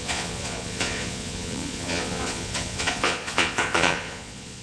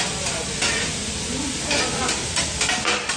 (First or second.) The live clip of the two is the second